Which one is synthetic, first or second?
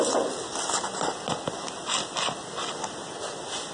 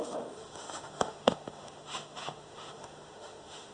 second